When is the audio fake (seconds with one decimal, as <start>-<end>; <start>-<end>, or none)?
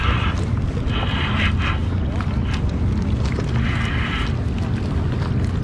none